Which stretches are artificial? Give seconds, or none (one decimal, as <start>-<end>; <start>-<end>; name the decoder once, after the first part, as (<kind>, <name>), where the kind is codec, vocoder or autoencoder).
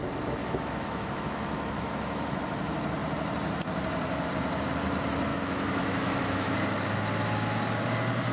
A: 0.4-2.4 (autoencoder, DAC-VAE); 5.3-6.5